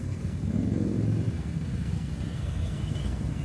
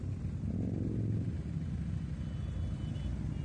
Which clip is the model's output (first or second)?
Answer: first